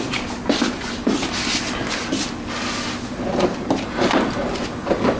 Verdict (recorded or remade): recorded